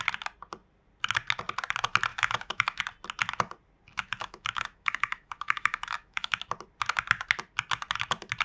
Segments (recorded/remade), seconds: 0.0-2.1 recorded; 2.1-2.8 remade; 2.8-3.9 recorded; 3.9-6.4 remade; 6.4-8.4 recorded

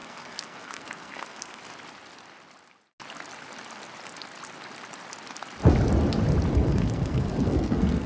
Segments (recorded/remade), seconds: 0.0-1.6 remade; 1.6-6.5 recorded; 6.5-8.1 remade

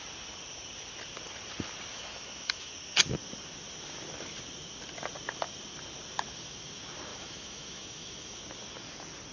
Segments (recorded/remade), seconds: 0.0-1.9 recorded; 1.9-2.7 remade; 2.7-7.1 recorded; 7.1-8.4 remade; 8.4-9.3 recorded

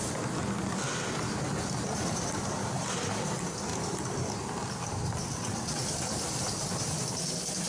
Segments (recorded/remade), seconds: 0.0-5.2 recorded; 5.2-5.8 remade; 5.8-7.7 recorded

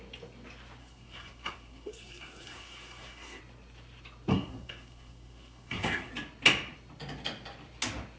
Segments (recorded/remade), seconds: 0.0-0.8 recorded; 0.8-3.4 remade; 3.4-4.3 recorded; 4.3-6.1 remade; 6.1-8.2 recorded